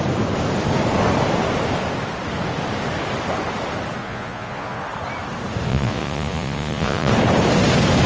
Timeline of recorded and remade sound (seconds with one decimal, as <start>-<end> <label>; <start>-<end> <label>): 0.0-4.0 recorded; 4.0-4.8 remade; 4.8-5.7 recorded; 5.7-7.1 remade; 7.1-8.1 recorded